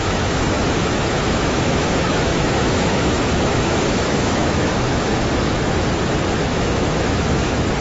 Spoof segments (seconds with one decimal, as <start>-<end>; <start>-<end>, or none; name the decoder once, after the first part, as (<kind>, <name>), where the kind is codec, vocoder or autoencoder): 0.0-5.1 (autoencoder, DAC-VAE); 6.4-7.8